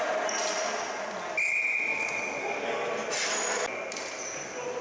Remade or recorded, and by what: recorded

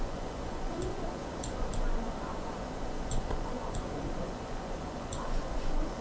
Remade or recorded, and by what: remade, vocoder, Vocos